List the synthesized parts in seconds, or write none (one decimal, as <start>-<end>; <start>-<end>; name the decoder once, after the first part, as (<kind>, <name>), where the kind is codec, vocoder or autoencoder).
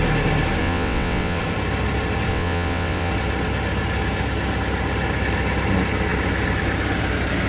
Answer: 0.6-1.4 (vocoder, WaveNeXt); 2.3-3.1